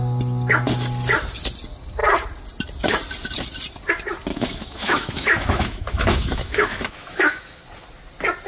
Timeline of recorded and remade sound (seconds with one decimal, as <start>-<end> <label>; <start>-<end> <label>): 0.0-4.3 recorded; 4.3-7.6 remade; 7.6-8.5 recorded